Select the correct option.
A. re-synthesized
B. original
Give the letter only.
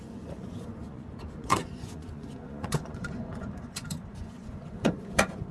A